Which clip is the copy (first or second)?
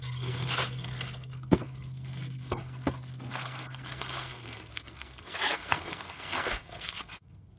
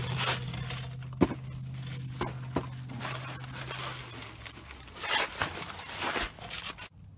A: first